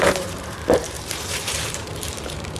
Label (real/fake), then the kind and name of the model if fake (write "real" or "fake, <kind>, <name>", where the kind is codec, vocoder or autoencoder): fake, vocoder, BigVGAN v2